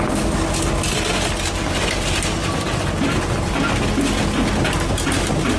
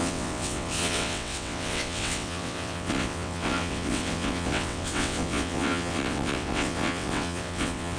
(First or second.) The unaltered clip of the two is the first